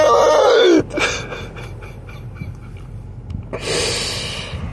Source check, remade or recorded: recorded